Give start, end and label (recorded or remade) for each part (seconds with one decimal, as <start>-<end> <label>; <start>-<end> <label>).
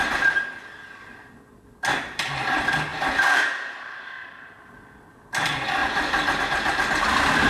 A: 0.0-2.9 recorded; 2.9-3.4 remade; 3.4-5.8 recorded; 5.8-6.4 remade; 6.4-7.5 recorded